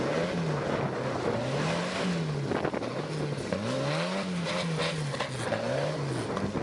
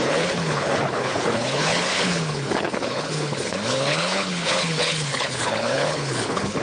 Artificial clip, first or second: second